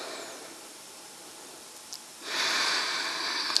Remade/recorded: recorded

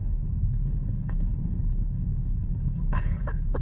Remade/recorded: remade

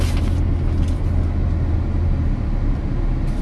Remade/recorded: recorded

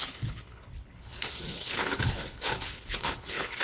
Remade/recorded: remade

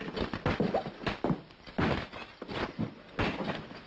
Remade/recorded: recorded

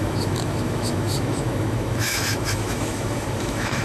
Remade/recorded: remade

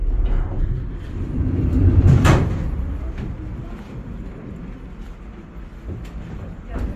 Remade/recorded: remade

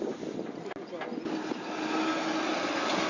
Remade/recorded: recorded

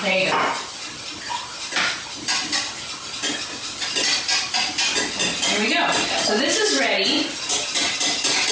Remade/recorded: recorded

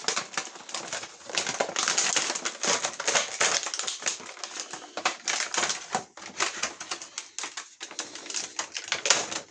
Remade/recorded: recorded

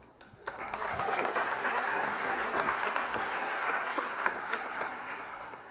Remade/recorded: remade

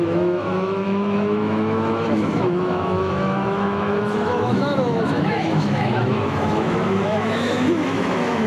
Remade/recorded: remade